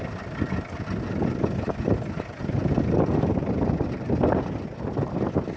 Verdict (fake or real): real